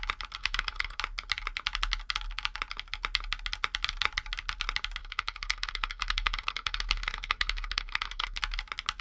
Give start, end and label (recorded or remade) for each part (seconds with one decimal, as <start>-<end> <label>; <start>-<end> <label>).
0.0-0.4 recorded; 0.4-1.0 remade; 1.0-5.0 recorded; 5.0-8.4 remade; 8.4-9.0 recorded